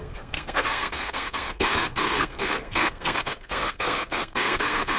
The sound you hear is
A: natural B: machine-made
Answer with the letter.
B